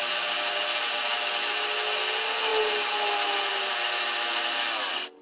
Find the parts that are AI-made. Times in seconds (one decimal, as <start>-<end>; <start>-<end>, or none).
none